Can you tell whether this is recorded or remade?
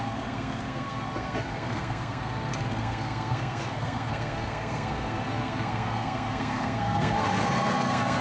remade